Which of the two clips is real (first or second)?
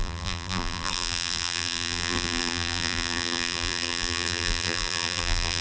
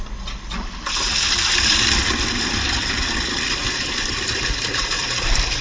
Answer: second